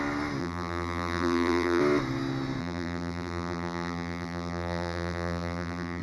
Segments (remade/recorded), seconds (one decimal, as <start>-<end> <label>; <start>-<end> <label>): 0.0-0.4 recorded; 0.4-1.8 remade; 1.8-2.6 recorded; 2.6-6.0 remade

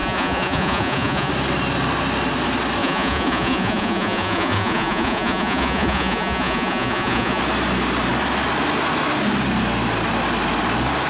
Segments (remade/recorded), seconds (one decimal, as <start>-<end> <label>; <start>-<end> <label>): 0.0-1.3 remade; 1.3-2.8 recorded; 2.8-7.4 remade; 7.4-11.1 recorded

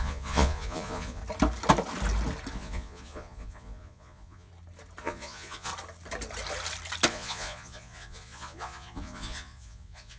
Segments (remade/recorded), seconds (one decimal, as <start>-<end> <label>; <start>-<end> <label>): 0.0-1.2 remade; 1.2-2.5 recorded; 2.5-4.5 remade; 4.5-5.0 recorded; 5.0-5.7 remade; 5.7-7.1 recorded; 7.1-10.2 remade

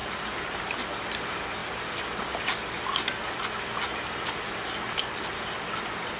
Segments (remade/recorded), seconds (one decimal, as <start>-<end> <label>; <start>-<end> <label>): 0.0-0.6 remade; 0.6-6.2 recorded

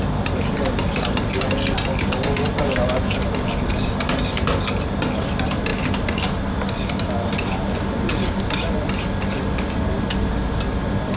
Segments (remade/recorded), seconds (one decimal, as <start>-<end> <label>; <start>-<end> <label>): 0.0-11.2 recorded

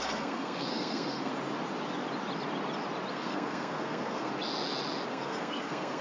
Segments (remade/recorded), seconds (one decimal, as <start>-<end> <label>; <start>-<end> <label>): 0.0-1.3 remade; 1.3-3.1 recorded; 3.1-4.3 remade; 4.3-5.1 recorded; 5.1-6.0 remade

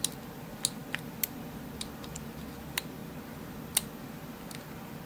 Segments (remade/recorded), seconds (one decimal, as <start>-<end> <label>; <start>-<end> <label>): 0.0-5.1 recorded

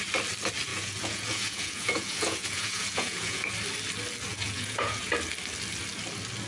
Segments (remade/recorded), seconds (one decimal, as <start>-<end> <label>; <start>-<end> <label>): 0.0-0.7 recorded; 0.7-3.5 remade; 3.5-4.3 recorded; 4.3-5.1 remade; 5.1-6.5 recorded